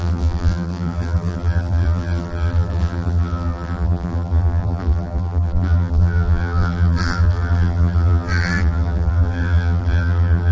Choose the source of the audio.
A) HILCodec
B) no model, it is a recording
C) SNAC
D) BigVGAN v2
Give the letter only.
D